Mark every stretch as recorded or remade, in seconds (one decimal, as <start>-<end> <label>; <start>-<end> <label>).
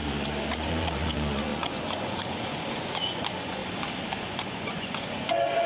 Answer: 0.0-3.6 remade; 3.6-4.2 recorded; 4.2-5.7 remade